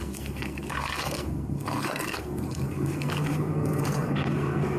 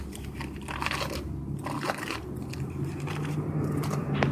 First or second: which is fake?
first